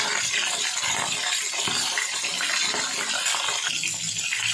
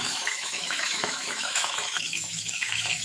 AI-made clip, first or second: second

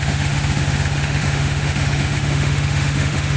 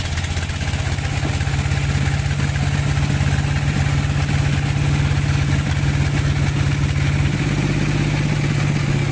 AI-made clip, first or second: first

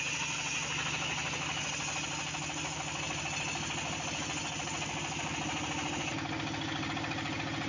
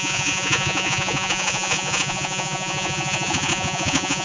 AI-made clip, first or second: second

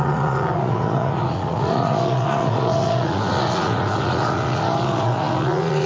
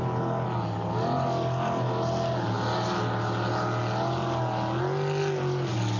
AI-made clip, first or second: first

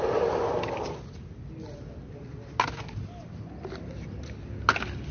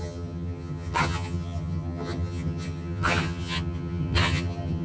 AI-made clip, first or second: second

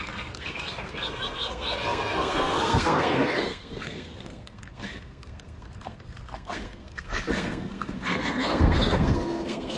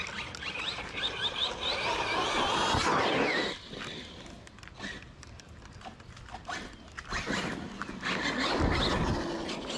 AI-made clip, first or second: first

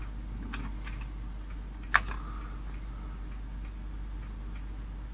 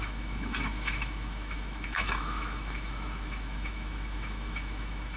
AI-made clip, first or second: second